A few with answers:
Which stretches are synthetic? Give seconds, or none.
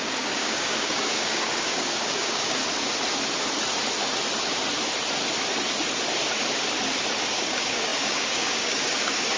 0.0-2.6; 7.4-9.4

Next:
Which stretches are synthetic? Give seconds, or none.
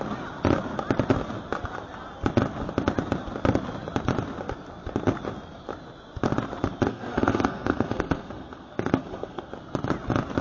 6.9-9.5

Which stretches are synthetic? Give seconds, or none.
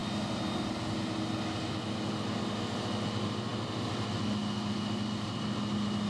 none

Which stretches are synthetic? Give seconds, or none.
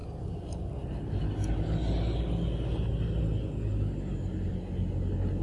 none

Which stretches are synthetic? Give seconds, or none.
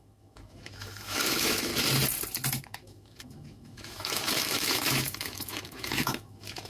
0.0-1.7; 2.6-6.7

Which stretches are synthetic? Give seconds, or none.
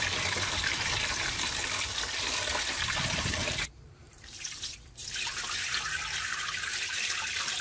3.4-4.4